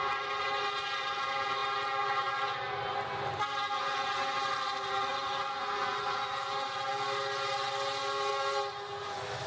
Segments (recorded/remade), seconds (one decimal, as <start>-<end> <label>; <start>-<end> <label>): 0.0-9.5 recorded